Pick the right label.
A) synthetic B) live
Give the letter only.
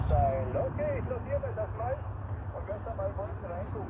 B